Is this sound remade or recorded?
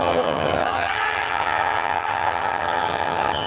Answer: remade